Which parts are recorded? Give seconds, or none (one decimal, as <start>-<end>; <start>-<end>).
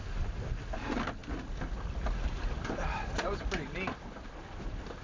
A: 0.0-5.0